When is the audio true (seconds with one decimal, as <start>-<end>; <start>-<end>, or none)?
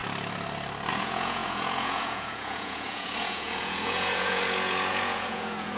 0.0-0.9